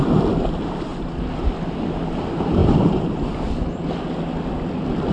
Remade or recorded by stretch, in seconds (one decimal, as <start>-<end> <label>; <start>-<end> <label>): 0.0-2.6 recorded; 2.6-3.3 remade; 3.3-5.1 recorded